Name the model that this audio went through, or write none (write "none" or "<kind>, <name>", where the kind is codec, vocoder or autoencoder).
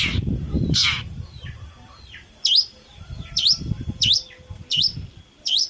vocoder, BigVGAN v2